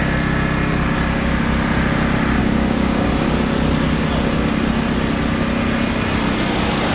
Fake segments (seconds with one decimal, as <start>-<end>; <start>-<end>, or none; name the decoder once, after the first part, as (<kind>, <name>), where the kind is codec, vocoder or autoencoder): 2.4-3.1 (codec, DAC)